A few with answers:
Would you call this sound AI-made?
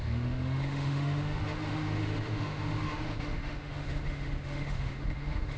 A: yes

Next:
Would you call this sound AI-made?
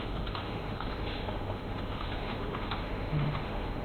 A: yes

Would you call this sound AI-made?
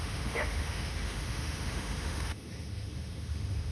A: yes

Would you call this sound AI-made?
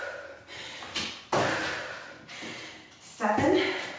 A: no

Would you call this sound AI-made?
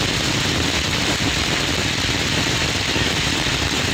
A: no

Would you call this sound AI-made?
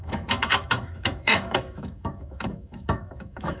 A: yes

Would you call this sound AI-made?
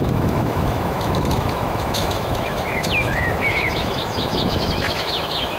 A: yes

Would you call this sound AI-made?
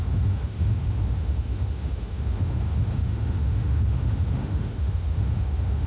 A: yes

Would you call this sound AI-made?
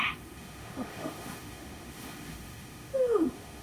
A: yes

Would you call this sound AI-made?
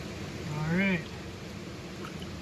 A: no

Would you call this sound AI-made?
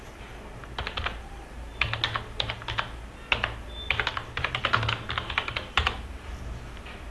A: no